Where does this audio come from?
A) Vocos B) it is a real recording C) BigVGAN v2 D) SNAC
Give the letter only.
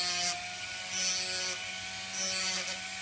B